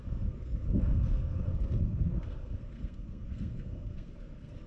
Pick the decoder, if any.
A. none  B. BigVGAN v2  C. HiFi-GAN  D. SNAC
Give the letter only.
D